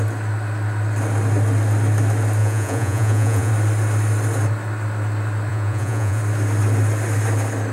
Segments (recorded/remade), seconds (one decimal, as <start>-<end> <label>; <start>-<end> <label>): 0.0-2.4 recorded; 2.4-3.5 remade; 3.5-5.5 recorded; 5.5-6.2 remade; 6.2-7.7 recorded